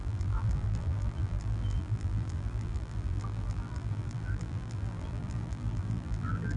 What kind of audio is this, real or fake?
fake